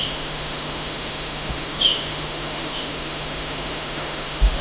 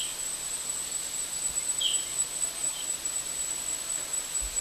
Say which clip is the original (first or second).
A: second